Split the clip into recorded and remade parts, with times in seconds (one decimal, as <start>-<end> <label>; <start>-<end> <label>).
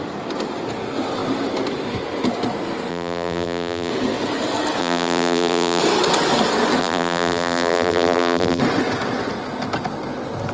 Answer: 0.0-2.9 recorded; 2.9-3.9 remade; 3.9-4.8 recorded; 4.8-5.8 remade; 5.8-6.8 recorded; 6.8-8.6 remade; 8.6-10.5 recorded